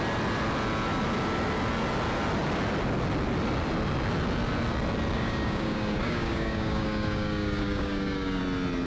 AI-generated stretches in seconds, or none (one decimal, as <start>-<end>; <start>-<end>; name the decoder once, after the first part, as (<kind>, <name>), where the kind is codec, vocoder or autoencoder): 5.1-8.4 (codec, DAC)